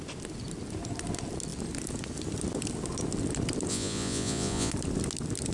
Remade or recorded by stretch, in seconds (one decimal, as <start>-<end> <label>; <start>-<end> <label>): 0.0-3.7 recorded; 3.7-4.7 remade; 4.7-5.5 recorded